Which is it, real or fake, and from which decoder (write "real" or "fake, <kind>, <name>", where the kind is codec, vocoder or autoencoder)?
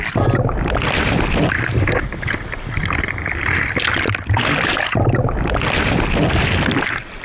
real